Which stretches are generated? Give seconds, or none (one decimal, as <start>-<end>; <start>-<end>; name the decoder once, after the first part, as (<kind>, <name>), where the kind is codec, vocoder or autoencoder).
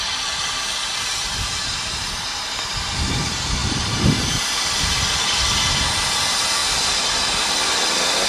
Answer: 0.0-6.6 (vocoder, BigVGAN v2); 7.3-8.3